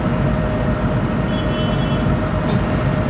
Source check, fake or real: real